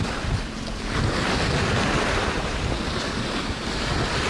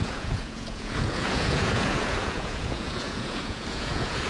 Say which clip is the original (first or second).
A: first